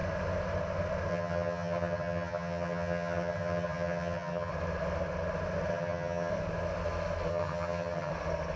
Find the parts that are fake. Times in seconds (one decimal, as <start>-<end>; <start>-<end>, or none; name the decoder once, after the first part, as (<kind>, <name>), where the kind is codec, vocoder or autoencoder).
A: 1.1-4.5 (vocoder, HiFi-GAN); 5.7-6.3; 7.3-8.1